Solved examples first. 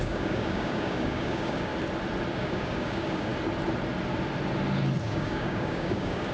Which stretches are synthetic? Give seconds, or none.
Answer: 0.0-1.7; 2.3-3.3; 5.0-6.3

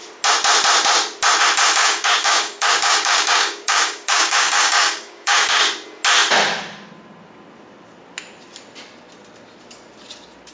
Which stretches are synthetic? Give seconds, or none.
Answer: 1.8-5.6

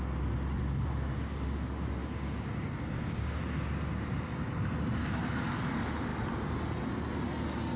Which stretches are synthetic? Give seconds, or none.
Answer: 2.0-3.4

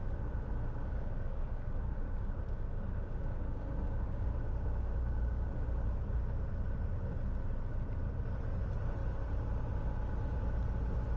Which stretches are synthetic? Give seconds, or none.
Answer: 0.8-5.5

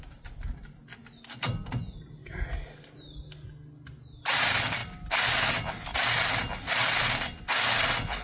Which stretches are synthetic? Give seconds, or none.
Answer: none